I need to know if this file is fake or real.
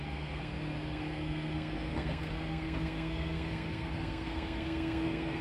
fake